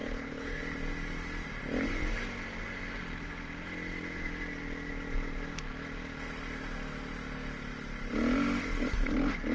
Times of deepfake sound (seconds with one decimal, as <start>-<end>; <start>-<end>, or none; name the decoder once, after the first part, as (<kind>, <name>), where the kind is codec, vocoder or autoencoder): 0.0-0.6 (codec, HILCodec)